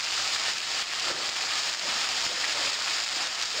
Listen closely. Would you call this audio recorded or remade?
remade